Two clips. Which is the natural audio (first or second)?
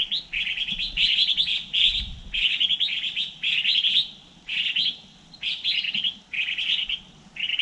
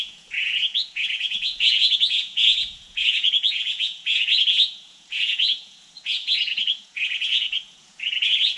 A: first